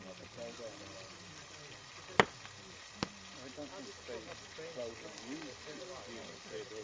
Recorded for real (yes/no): yes